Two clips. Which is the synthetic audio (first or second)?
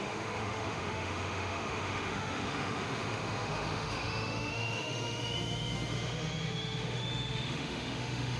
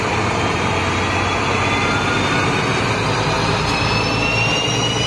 first